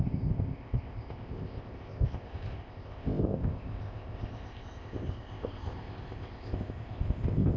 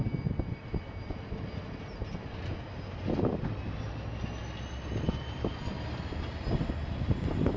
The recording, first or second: second